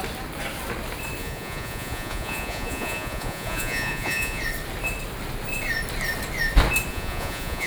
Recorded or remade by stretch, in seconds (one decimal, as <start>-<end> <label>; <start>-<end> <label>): 0.0-1.2 recorded; 1.2-4.4 remade; 4.4-6.9 recorded; 6.9-7.7 remade